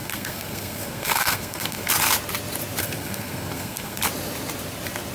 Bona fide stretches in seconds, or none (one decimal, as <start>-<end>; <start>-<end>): 1.9-2.8; 4.0-5.1